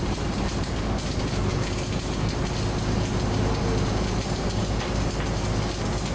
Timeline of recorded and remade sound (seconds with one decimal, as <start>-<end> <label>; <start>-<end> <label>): 0.0-6.1 recorded